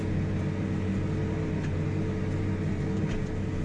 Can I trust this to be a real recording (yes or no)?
yes